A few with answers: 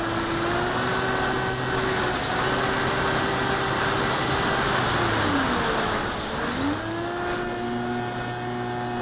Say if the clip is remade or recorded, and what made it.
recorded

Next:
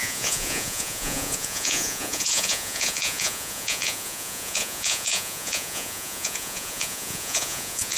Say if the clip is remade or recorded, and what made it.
remade, vocoder, Vocos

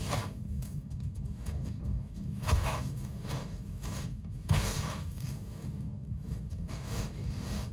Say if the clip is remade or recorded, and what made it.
remade, codec, DAC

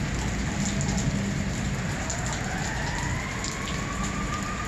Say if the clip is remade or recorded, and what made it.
recorded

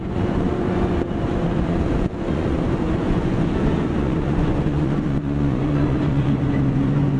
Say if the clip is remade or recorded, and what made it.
remade, vocoder, Vocos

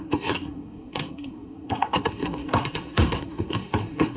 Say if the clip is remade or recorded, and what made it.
remade, codec, SNAC